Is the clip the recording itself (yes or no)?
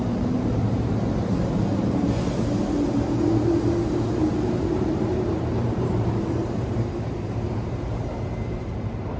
no